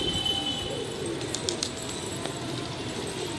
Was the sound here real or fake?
real